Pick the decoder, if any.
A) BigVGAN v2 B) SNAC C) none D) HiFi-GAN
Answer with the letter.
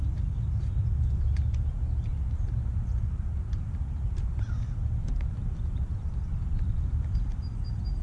A